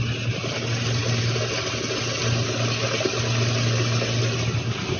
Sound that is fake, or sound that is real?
real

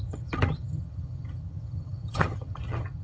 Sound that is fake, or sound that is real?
fake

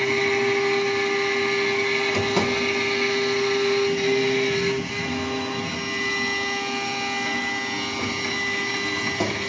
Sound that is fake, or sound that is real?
real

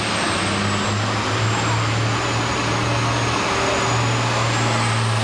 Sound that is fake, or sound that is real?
real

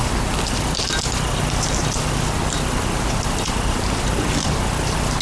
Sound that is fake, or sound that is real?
real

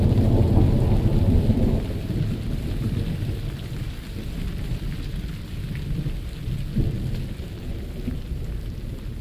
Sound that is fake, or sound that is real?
real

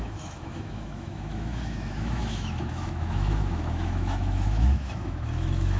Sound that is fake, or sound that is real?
fake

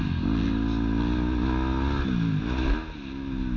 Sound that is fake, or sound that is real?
real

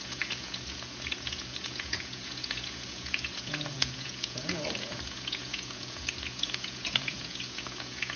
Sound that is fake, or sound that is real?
fake